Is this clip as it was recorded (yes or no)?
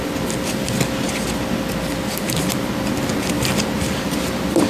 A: yes